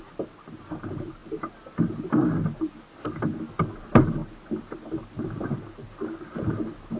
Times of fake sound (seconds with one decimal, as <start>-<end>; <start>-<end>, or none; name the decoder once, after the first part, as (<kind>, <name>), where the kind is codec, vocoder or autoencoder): none